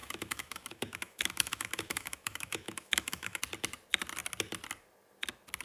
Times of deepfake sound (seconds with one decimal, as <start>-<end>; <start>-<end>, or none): 0.0-3.4